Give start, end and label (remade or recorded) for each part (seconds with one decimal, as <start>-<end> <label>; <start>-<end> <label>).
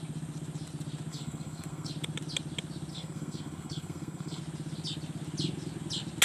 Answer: 0.0-1.1 recorded; 1.1-1.9 remade; 1.9-2.9 recorded; 2.9-4.4 remade; 4.4-6.2 recorded